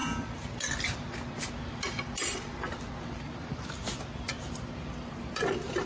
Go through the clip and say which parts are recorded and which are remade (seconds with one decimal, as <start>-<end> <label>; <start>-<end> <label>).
0.0-5.9 recorded